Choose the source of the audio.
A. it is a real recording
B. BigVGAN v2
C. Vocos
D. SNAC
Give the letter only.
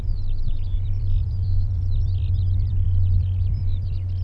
B